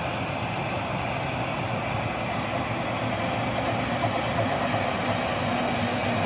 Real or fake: real